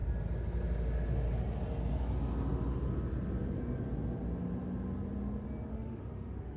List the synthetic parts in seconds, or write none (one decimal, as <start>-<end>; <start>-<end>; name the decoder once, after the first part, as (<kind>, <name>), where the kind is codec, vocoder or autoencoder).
5.7-6.6 (autoencoder, DAC-VAE)